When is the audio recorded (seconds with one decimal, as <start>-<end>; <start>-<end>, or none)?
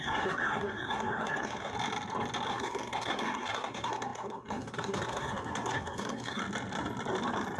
1.7-2.5; 6.4-7.6